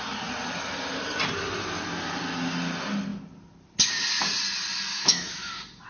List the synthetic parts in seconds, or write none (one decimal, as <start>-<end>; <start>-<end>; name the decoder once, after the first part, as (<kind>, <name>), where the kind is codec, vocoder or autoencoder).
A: 4.9-5.5 (autoencoder, DAC-VAE)